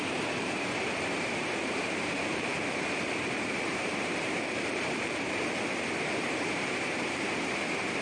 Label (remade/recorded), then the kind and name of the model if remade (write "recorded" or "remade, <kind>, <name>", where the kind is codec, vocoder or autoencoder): remade, vocoder, BigVGAN v2